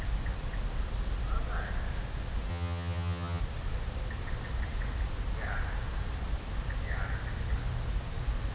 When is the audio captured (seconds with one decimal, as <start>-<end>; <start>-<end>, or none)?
0.0-2.5; 3.4-8.5